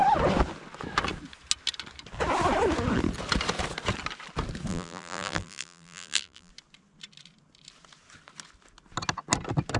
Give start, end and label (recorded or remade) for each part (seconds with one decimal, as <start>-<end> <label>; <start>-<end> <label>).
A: 0.0-4.7 recorded; 4.7-6.5 remade; 6.5-9.8 recorded